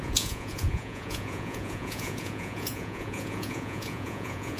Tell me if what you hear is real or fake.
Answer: fake